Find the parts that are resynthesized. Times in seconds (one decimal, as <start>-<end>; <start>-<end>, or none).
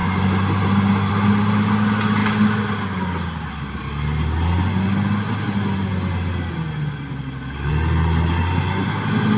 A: none